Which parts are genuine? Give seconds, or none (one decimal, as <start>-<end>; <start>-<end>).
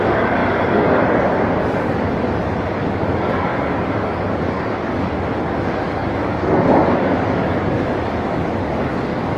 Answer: none